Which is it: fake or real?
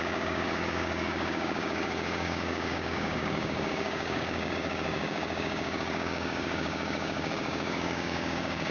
fake